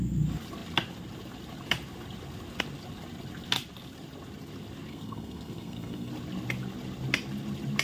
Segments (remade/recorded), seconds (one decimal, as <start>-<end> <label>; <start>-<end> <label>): 0.0-4.9 recorded; 4.9-6.1 remade; 6.1-7.8 recorded